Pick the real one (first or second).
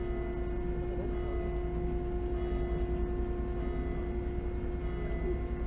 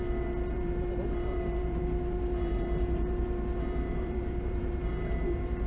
first